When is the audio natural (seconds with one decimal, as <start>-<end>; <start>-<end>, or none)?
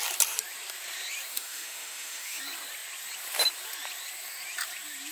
0.0-1.3; 2.4-5.1